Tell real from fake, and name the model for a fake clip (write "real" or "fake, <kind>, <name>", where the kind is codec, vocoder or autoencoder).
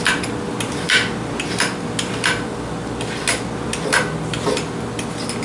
real